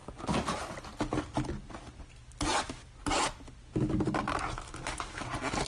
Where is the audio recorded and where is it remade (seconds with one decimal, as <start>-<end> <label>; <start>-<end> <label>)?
0.0-5.7 recorded